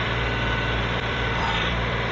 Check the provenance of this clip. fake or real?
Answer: fake